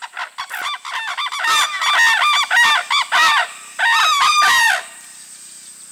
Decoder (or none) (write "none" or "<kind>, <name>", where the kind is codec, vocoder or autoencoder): none